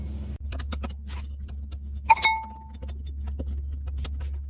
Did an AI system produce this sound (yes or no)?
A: no